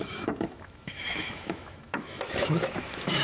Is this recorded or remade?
remade